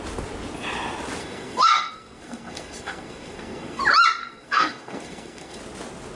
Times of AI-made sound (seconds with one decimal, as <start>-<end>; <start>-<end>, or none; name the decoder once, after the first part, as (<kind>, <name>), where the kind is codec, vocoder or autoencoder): 1.2-3.8 (codec, SNAC); 4.2-5.6